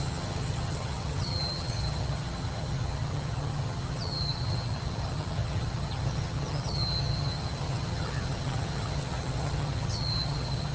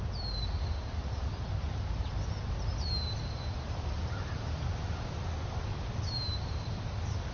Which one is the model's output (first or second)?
first